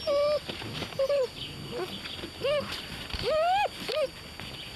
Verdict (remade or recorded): recorded